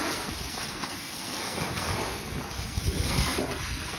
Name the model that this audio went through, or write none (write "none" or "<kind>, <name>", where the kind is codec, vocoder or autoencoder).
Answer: codec, SNAC